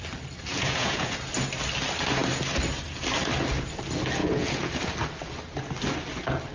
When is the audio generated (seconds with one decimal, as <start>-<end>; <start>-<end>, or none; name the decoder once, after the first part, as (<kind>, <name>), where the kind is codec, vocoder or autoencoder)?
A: 0.5-1.2 (vocoder, Vocos); 4.2-4.7